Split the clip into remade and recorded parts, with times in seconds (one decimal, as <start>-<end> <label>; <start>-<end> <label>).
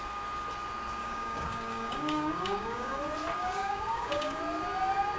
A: 0.0-1.0 recorded; 1.0-3.0 remade; 3.0-3.4 recorded; 3.4-4.4 remade; 4.4-5.2 recorded